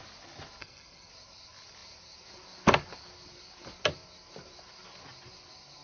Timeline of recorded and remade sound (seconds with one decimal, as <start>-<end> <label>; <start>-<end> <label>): 0.0-0.6 recorded; 0.6-1.1 remade; 1.1-5.8 recorded